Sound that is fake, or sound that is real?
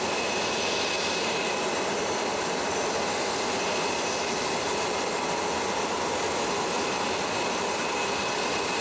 real